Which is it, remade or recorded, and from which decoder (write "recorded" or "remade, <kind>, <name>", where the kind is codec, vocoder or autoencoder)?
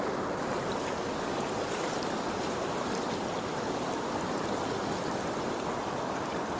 recorded